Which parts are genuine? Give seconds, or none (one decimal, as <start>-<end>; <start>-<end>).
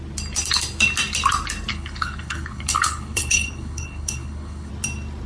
0.0-1.7; 4.7-5.3